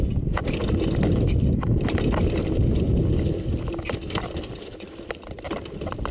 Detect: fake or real real